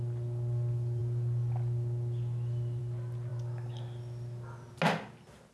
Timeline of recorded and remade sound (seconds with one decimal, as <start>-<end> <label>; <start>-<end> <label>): 0.0-5.5 recorded